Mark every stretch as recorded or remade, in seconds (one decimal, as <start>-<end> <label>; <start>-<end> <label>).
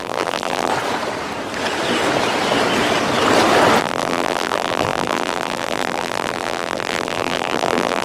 0.0-0.7 remade; 0.7-3.8 recorded; 3.8-8.0 remade